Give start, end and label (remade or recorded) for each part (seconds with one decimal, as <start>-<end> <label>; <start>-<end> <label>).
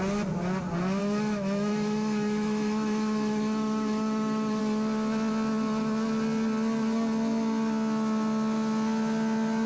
0.0-1.0 recorded; 1.0-4.6 remade; 4.6-9.7 recorded